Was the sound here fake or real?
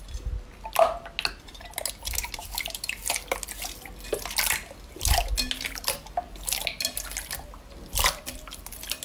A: real